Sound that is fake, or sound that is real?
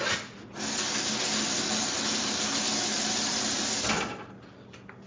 real